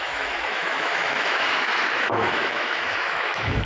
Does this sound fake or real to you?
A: fake